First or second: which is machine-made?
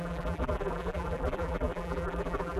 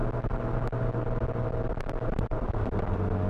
first